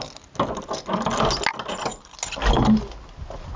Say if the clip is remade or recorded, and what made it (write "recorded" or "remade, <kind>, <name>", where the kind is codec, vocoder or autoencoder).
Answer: recorded